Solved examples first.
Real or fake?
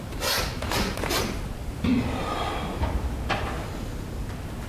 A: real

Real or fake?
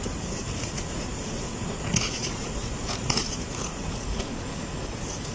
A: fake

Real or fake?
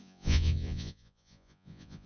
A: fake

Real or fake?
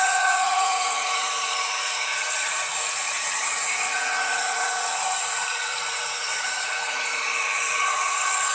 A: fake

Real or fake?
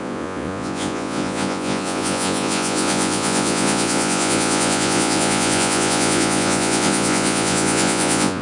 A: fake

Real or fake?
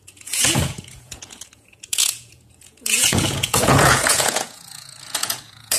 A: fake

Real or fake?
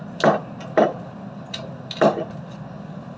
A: real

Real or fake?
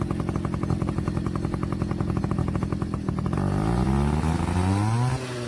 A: real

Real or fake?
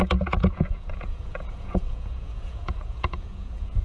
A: fake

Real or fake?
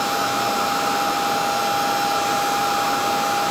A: real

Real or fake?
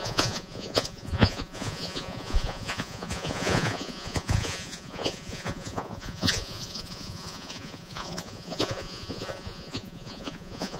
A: fake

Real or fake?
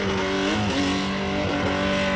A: real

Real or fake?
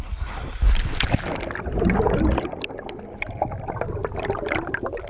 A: real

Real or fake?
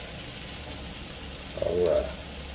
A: real